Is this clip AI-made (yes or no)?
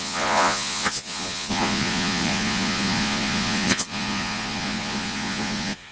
yes